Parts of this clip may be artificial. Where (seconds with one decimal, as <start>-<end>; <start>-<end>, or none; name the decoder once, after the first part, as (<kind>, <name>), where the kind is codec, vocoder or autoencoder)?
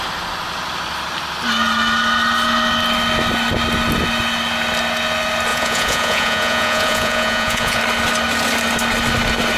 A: 5.5-7.8 (vocoder, Vocos)